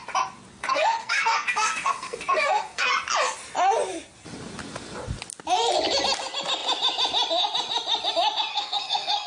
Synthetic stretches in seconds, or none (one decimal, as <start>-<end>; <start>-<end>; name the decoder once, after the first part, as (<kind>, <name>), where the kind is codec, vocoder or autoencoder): 0.6-2.9 (codec, SNAC); 8.5-9.3